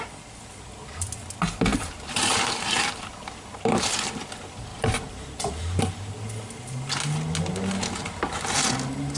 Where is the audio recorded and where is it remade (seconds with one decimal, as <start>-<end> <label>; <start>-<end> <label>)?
0.0-1.7 recorded; 1.7-3.0 remade; 3.0-3.5 recorded; 3.5-4.1 remade; 4.1-4.7 recorded; 4.7-6.9 remade; 6.9-9.2 recorded